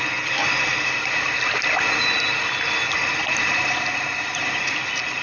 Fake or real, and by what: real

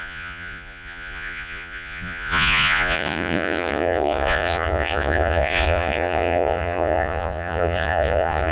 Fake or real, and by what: fake, vocoder, Vocos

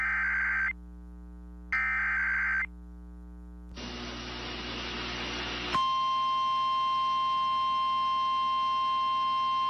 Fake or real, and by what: real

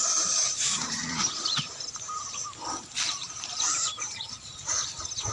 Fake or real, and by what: fake, vocoder, BigVGAN v2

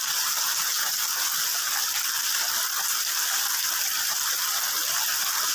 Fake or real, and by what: real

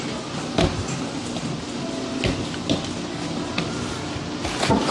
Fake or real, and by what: real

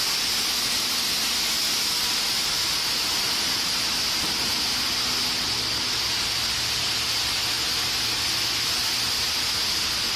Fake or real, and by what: real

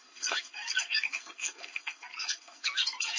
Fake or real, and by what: fake, codec, SNAC